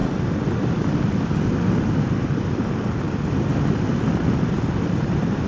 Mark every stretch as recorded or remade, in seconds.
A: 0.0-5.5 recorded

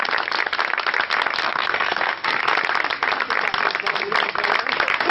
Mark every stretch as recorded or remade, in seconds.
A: 0.0-1.4 recorded; 1.4-2.4 remade; 2.4-5.1 recorded

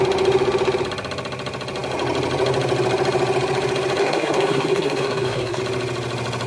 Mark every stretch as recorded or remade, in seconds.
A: 0.0-4.0 recorded; 4.0-5.6 remade; 5.6-6.5 recorded

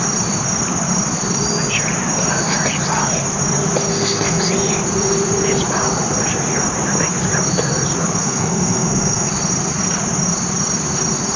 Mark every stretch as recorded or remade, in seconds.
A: 0.0-3.9 recorded; 3.9-4.4 remade; 4.4-8.2 recorded; 8.2-9.3 remade; 9.3-11.4 recorded

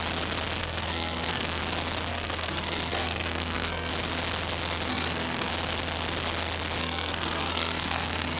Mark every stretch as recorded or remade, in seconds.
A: 0.0-0.6 recorded; 0.6-1.6 remade; 1.6-2.1 recorded; 2.1-3.9 remade; 3.9-4.9 recorded; 4.9-5.5 remade; 5.5-6.8 recorded; 6.8-8.4 remade

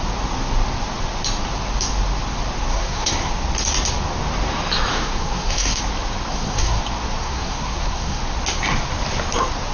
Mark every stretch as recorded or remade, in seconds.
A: 0.0-2.7 recorded; 2.7-3.3 remade; 3.3-4.9 recorded; 4.9-5.8 remade; 5.8-6.3 recorded; 6.3-6.8 remade; 6.8-7.2 recorded; 7.2-8.2 remade; 8.2-9.7 recorded

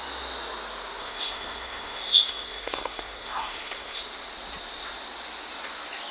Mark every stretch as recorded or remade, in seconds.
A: 0.0-1.0 recorded; 1.0-4.0 remade; 4.0-6.1 recorded